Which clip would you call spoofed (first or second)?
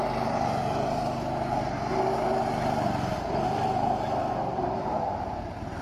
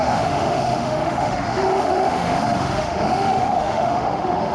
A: second